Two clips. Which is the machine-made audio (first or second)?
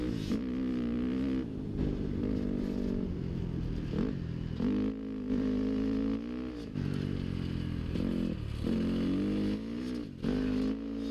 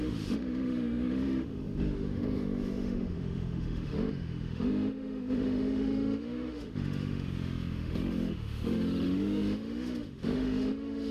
second